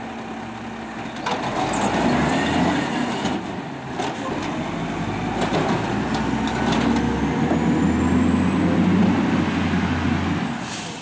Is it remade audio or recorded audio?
recorded